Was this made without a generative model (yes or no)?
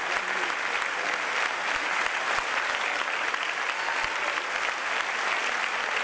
yes